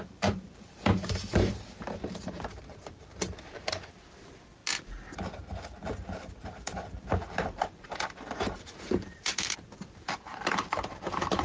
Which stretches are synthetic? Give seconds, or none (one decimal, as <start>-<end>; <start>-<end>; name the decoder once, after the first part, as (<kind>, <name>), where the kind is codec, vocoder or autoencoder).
0.0-4.6 (vocoder, BigVGAN v2); 5.9-11.4